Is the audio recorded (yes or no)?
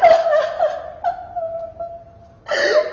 yes